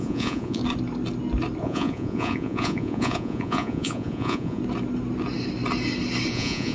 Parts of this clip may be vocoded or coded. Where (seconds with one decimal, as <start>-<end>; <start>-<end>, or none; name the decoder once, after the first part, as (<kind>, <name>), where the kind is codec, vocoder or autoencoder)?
0.0-0.6 (vocoder, Vocos); 1.6-4.6; 6.3-6.7